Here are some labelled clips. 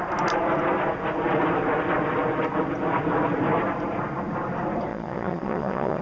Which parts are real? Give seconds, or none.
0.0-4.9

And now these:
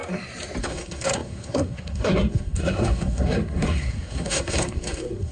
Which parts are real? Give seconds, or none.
0.0-0.6

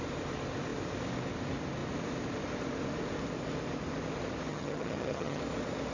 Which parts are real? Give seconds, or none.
0.0-4.5; 5.4-5.9

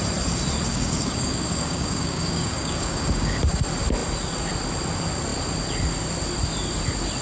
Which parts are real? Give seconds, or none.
0.0-0.7; 3.4-7.2

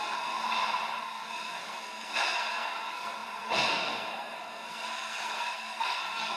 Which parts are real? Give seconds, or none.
0.4-1.0

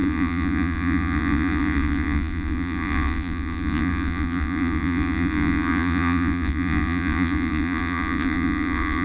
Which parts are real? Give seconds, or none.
none